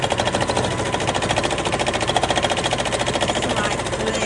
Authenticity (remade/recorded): recorded